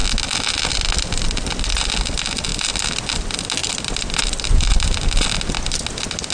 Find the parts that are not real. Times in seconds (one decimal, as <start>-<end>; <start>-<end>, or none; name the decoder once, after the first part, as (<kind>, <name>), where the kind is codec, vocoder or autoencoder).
3.6-5.2 (vocoder, BigVGAN v2)